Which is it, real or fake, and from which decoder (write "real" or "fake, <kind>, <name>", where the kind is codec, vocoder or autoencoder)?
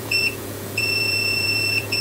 fake, vocoder, Vocos